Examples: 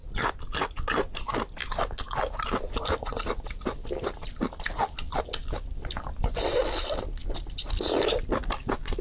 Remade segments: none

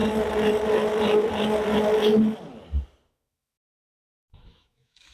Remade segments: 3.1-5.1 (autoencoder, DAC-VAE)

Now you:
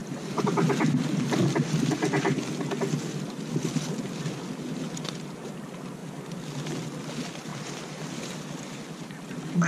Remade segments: 0.0-2.9 (vocoder, BigVGAN v2); 7.5-8.2

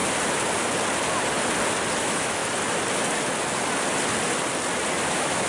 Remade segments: 2.0-2.4 (autoencoder, DAC-VAE); 5.1-5.5

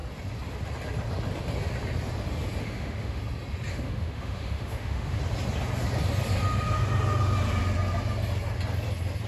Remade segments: 2.6-3.2 (autoencoder, DAC-VAE); 3.7-5.2

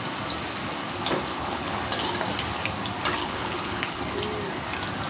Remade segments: 1.3-1.8 (codec, HILCodec); 3.2-4.0